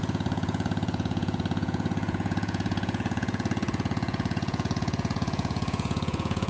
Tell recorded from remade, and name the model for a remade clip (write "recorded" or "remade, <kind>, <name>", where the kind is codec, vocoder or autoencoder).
remade, vocoder, Vocos